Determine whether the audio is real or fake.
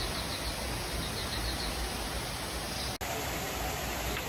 real